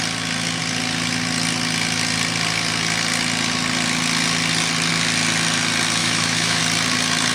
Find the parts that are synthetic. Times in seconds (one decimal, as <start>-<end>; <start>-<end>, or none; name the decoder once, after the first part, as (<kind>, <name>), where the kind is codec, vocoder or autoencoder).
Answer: 6.0-6.6 (autoencoder, DAC-VAE)